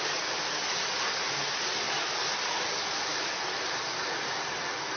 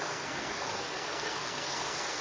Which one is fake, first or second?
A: second